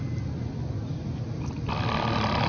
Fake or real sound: real